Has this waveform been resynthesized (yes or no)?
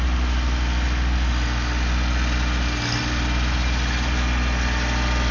no